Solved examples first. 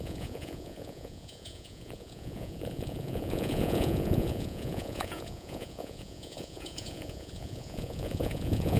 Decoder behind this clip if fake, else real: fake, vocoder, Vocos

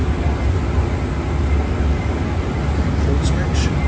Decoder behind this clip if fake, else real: real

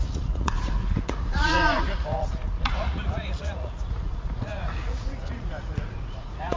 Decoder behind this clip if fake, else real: fake, vocoder, Vocos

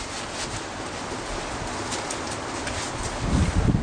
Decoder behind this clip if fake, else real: real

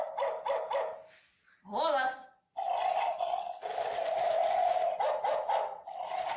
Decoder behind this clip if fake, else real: real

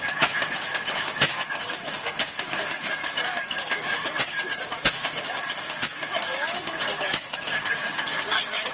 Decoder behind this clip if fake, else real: fake, codec, DAC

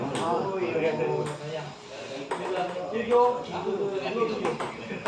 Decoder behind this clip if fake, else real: real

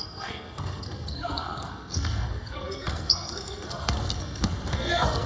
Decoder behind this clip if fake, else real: fake, codec, SNAC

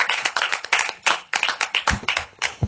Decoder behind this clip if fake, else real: fake, codec, HILCodec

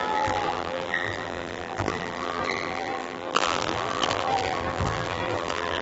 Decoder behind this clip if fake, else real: fake, vocoder, BigVGAN v2